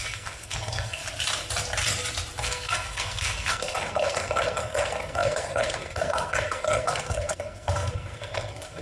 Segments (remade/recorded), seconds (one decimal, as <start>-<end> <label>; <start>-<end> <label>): 0.0-1.0 remade; 1.0-2.4 recorded; 2.4-8.8 remade